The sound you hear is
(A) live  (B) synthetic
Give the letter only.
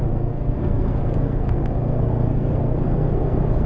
B